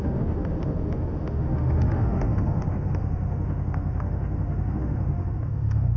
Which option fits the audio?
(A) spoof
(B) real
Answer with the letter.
A